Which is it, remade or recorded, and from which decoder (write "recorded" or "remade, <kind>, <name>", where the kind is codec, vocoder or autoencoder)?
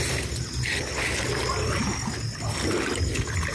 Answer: recorded